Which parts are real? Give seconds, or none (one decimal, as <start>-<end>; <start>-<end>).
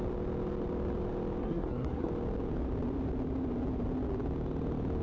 0.0-1.4; 2.1-5.0